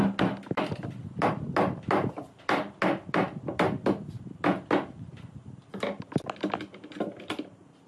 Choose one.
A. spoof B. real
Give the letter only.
B